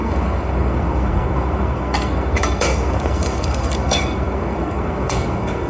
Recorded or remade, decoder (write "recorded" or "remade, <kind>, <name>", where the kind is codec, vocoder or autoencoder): remade, codec, SNAC